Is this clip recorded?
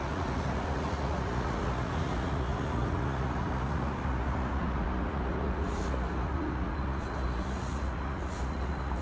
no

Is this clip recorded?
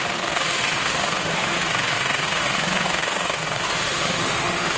no